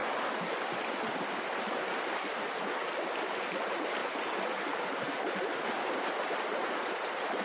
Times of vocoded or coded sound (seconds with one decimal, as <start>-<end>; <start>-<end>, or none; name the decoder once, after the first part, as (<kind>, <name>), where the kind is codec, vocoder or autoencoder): none